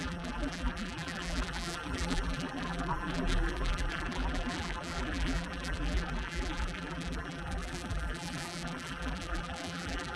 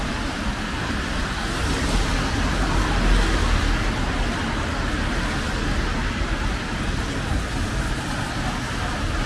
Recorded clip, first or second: second